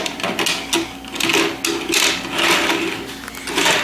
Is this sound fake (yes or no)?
no